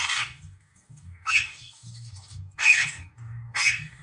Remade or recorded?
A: remade